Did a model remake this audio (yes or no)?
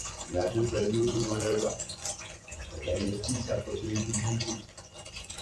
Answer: yes